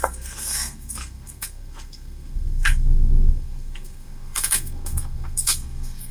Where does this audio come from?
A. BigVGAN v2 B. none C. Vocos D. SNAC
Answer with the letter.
D